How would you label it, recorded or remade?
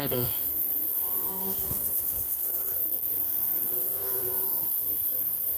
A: remade